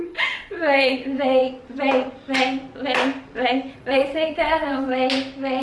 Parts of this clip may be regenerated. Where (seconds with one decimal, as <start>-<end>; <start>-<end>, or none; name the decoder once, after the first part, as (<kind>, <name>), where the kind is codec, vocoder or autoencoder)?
0.0-1.4 (vocoder, WaveNeXt); 3.7-4.9